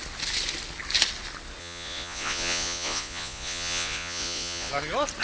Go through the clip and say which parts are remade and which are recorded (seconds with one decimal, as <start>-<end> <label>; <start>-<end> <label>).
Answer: 0.0-1.6 recorded; 1.6-4.7 remade; 4.7-5.2 recorded